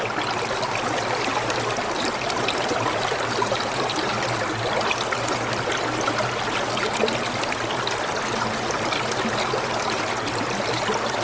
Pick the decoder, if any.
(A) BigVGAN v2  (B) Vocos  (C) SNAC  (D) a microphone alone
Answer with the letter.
D